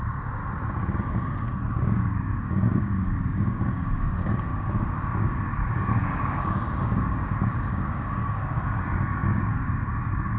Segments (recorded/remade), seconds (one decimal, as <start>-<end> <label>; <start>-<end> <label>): 0.0-0.4 remade; 0.4-1.7 recorded; 1.7-4.5 remade; 4.5-5.2 recorded; 5.2-10.4 remade